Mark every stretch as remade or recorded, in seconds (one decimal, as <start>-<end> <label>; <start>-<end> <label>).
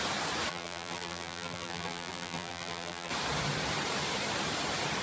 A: 0.0-0.5 recorded; 0.5-3.1 remade; 3.1-5.0 recorded